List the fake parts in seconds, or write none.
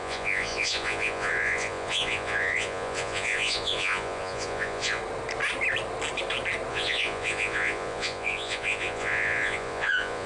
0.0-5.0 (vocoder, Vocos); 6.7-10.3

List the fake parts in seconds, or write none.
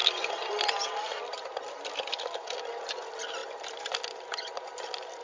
none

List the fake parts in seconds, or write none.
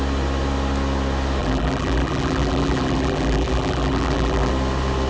1.4-4.5 (vocoder, BigVGAN v2)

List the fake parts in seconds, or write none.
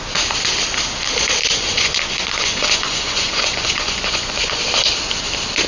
1.4-4.6 (vocoder, Vocos)